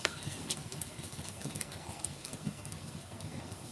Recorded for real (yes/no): no